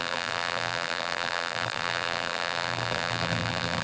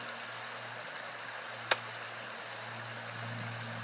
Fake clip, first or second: first